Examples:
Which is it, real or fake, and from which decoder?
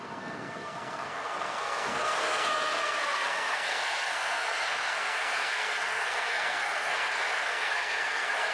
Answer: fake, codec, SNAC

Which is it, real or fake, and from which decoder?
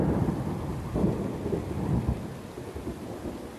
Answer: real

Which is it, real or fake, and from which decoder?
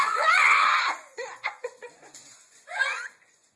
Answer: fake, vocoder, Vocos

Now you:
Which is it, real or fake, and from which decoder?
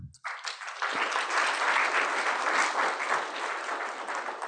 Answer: real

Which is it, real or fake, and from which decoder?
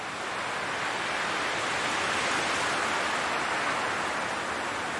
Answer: real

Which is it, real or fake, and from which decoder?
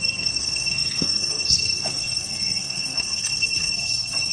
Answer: fake, codec, SNAC